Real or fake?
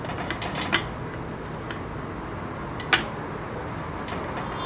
real